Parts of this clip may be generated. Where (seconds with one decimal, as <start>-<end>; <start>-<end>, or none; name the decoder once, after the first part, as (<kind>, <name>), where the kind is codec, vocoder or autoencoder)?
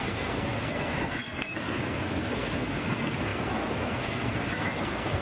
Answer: 0.0-5.2 (codec, SNAC)